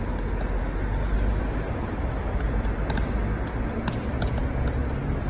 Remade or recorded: recorded